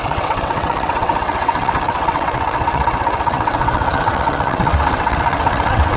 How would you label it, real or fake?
fake